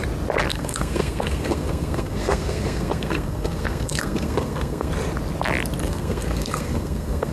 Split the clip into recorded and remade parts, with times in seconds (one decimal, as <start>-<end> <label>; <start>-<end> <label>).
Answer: 0.0-0.5 recorded; 0.5-4.9 remade; 4.9-5.8 recorded; 5.8-7.3 remade

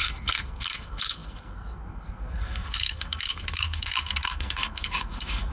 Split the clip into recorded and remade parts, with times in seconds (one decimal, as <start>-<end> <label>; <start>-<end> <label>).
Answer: 0.0-5.5 remade

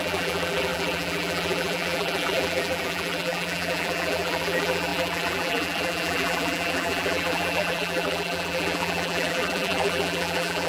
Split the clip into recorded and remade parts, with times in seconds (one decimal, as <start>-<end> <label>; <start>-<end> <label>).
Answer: 0.0-10.7 remade

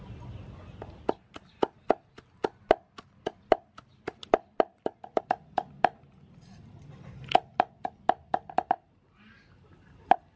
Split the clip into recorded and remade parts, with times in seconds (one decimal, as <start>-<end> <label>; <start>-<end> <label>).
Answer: 0.0-10.4 recorded

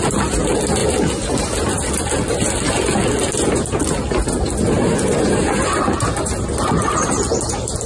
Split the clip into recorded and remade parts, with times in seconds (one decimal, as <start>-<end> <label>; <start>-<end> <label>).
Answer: 0.0-7.9 recorded

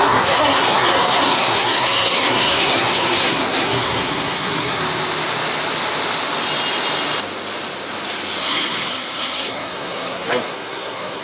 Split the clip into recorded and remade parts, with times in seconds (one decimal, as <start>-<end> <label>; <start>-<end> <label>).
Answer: 0.0-4.8 remade; 4.8-8.4 recorded; 8.4-11.2 remade

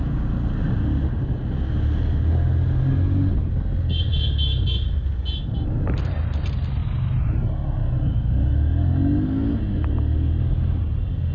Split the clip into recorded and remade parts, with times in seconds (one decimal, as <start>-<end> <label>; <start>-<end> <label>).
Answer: 0.0-11.3 recorded